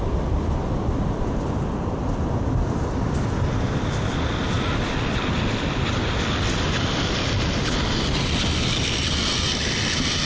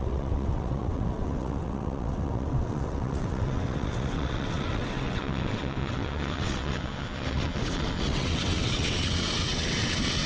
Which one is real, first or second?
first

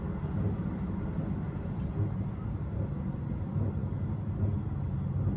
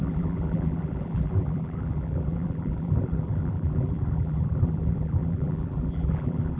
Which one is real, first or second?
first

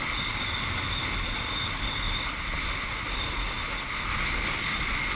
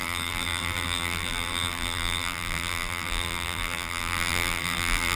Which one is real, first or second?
first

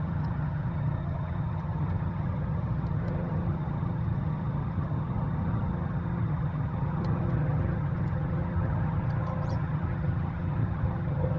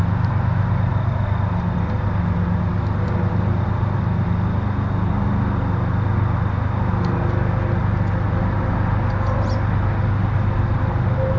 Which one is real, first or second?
second